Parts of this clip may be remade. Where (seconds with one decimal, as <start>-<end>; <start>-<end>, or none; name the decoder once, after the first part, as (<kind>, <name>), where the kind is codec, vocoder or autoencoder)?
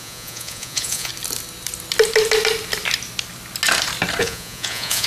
0.0-1.1 (vocoder, Vocos); 4.2-5.1